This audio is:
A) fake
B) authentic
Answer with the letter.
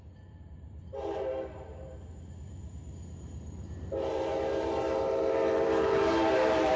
A